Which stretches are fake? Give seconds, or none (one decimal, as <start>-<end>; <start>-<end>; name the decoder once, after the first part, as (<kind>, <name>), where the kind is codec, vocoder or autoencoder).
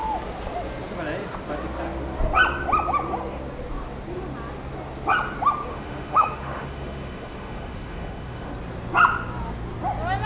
5.7-8.5 (autoencoder, DAC-VAE)